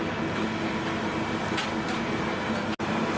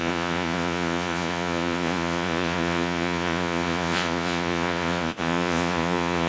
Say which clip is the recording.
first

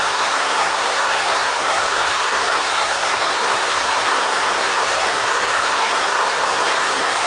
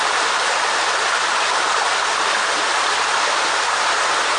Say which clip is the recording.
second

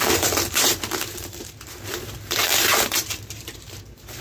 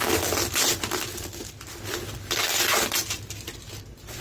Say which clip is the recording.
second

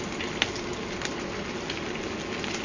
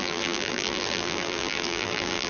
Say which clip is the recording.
first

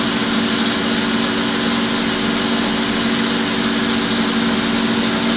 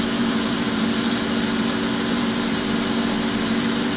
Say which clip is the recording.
first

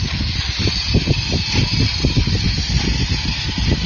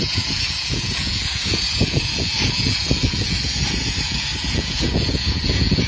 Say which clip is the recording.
first